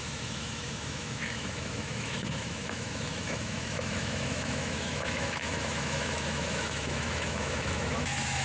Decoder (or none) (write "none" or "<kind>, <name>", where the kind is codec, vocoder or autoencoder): autoencoder, DAC-VAE